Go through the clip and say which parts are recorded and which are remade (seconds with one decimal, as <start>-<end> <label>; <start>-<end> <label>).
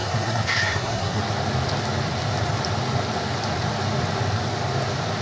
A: 0.0-1.2 remade; 1.2-5.2 recorded